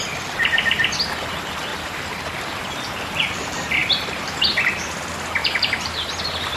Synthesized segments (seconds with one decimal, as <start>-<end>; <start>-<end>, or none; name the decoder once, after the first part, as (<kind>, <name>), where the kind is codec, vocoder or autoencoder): 1.7-2.6 (vocoder, BigVGAN v2); 3.8-4.4; 5.4-6.1